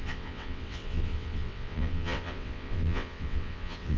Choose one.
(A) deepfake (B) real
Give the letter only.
A